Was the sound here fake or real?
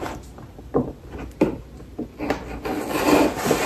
real